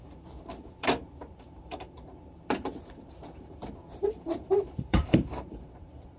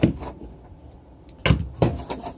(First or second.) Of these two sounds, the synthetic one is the first